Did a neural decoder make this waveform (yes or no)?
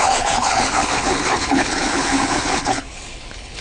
yes